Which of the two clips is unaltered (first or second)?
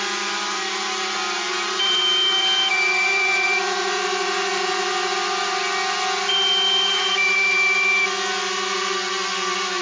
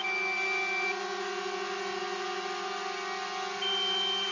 second